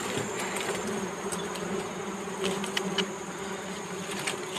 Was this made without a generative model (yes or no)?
yes